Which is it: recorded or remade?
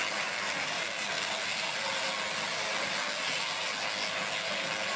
recorded